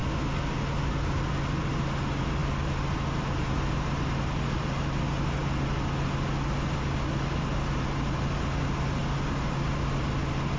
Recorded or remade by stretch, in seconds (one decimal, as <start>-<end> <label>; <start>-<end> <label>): 0.0-10.6 recorded